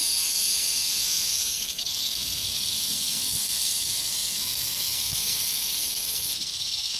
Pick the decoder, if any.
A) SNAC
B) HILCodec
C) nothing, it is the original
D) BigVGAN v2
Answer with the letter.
A